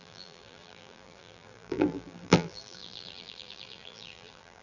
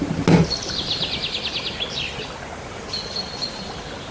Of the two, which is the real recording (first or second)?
second